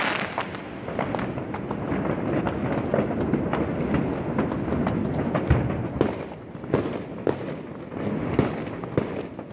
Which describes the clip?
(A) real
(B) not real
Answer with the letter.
A